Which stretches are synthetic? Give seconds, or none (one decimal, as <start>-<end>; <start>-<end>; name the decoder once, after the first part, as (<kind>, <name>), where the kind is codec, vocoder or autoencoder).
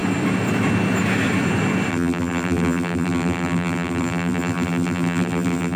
1.9-5.8 (vocoder, BigVGAN v2)